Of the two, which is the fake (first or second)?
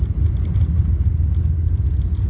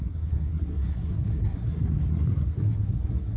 second